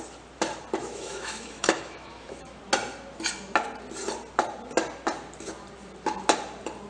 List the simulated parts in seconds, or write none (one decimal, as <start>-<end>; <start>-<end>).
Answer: 0.8-2.6